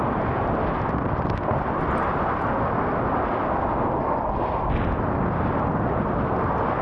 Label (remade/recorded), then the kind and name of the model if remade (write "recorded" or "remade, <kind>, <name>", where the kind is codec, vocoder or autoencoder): recorded